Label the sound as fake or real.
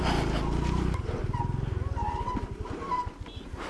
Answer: real